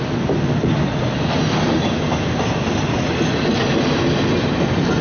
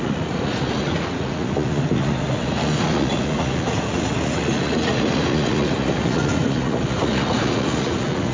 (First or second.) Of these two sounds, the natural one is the first